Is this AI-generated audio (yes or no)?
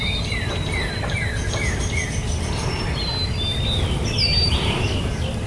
no